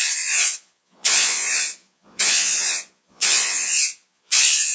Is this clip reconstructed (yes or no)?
yes